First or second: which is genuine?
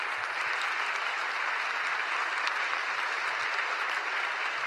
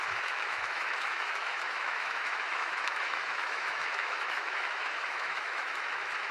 first